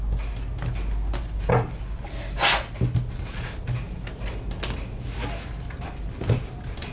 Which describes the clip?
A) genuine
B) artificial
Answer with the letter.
A